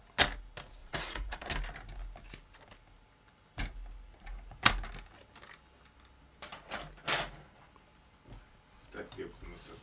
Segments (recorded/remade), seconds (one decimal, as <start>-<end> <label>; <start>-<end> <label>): 0.0-0.8 recorded; 0.8-1.5 remade; 1.5-9.8 recorded